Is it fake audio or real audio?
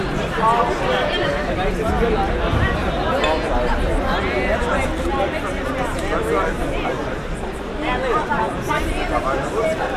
real